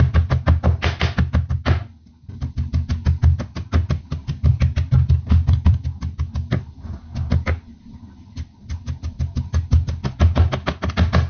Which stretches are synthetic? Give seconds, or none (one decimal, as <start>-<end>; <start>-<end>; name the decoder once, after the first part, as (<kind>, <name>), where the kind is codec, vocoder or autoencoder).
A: none